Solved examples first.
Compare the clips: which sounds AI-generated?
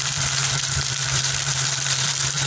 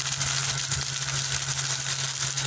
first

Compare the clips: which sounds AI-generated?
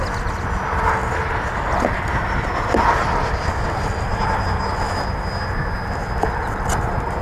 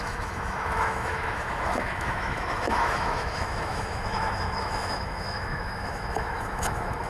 second